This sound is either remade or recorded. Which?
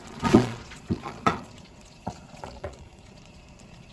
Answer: remade